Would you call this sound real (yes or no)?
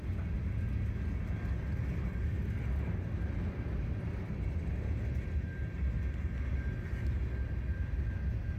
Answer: yes